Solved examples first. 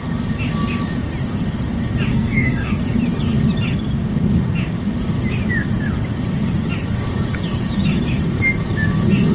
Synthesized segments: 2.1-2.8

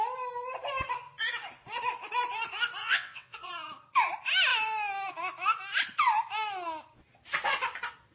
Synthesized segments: 2.8-3.5

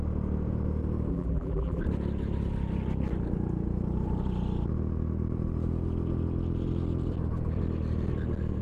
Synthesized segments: 1.1-1.8